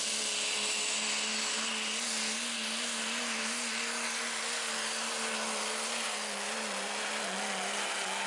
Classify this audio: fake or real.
real